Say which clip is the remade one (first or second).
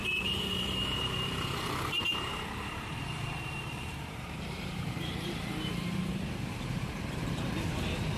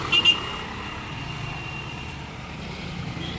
first